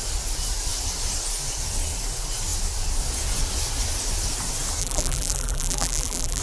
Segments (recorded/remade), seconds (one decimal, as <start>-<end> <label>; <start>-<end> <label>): 0.0-4.8 recorded; 4.8-6.4 remade